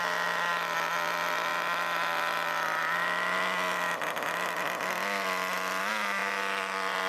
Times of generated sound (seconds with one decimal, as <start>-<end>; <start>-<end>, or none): none